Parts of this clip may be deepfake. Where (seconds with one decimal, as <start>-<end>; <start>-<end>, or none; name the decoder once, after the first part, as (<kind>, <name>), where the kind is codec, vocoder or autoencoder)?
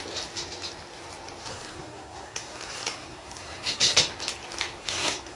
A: 1.5-4.0 (codec, SNAC); 4.8-5.4